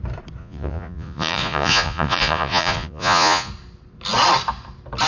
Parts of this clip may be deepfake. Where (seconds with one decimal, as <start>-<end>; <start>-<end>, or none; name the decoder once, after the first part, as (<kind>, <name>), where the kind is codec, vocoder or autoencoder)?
0.4-3.5 (vocoder, Vocos)